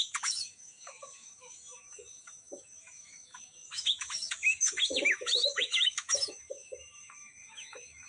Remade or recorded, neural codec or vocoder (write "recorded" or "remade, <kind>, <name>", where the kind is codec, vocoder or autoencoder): remade, autoencoder, DAC-VAE